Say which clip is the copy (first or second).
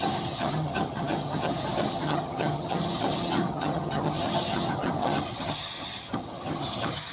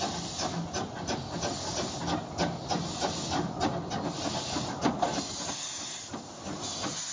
first